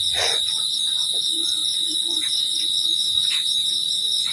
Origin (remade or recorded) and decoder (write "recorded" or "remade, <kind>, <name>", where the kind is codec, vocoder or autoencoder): remade, vocoder, Vocos